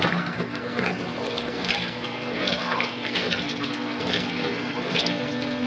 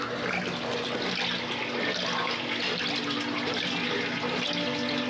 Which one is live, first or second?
second